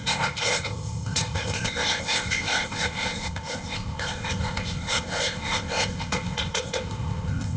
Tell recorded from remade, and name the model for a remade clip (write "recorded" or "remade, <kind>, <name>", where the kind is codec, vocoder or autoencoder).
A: remade, codec, ZipCodec